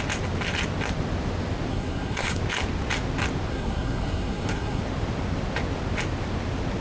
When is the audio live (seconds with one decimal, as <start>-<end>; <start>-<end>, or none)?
0.0-1.7; 2.4-3.5; 4.8-6.8